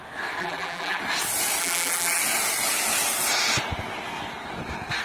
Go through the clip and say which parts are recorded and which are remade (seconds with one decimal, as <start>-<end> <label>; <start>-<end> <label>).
0.0-0.4 recorded; 0.4-1.0 remade; 1.0-1.6 recorded; 1.6-2.2 remade; 2.2-5.0 recorded